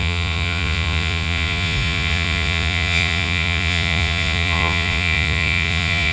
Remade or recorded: remade